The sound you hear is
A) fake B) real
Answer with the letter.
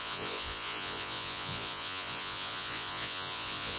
A